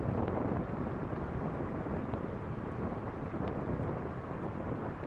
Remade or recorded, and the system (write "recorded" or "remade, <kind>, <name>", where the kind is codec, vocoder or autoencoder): recorded